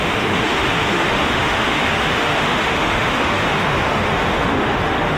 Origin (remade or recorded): remade